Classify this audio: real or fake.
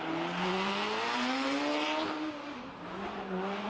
fake